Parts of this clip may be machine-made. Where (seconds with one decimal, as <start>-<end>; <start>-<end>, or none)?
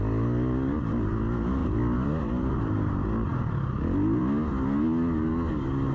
1.6-2.5